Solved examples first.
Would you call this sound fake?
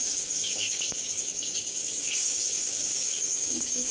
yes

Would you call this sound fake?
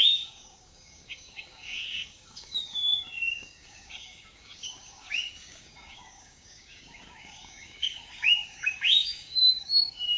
yes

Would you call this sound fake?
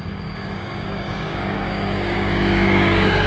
yes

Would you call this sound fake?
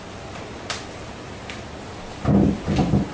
no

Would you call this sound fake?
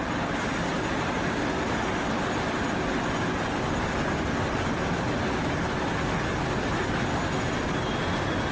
no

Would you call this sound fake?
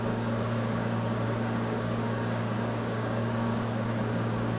yes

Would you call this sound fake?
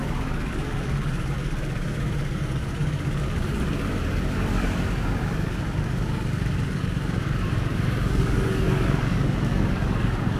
yes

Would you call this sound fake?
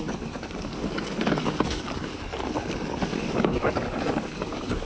yes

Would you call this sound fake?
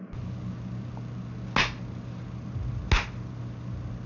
no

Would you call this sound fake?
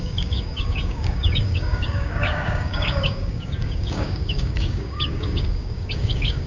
yes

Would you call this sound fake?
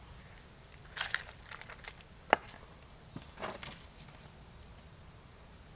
no